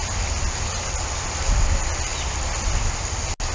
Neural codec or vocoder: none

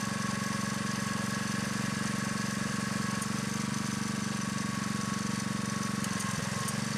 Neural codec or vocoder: none